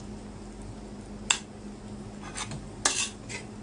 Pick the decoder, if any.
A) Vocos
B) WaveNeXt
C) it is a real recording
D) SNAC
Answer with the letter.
C